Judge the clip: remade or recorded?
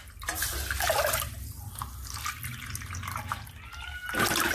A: recorded